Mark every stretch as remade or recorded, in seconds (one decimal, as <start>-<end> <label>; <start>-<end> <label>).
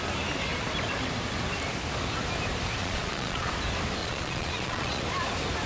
0.0-2.8 recorded; 2.8-3.5 remade; 3.5-4.0 recorded; 4.0-5.0 remade; 5.0-5.7 recorded